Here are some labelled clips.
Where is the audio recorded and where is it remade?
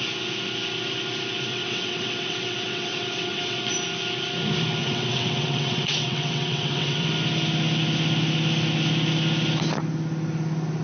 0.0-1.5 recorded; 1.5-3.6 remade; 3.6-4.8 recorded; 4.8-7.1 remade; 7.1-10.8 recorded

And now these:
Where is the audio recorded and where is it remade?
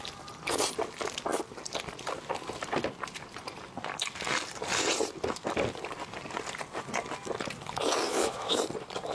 0.0-8.1 recorded; 8.1-8.6 remade; 8.6-9.1 recorded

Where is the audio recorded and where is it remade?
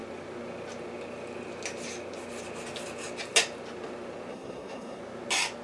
0.0-4.3 recorded; 4.3-5.0 remade; 5.0-5.6 recorded